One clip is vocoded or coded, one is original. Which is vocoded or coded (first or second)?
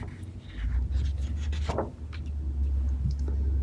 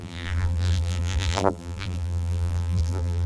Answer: second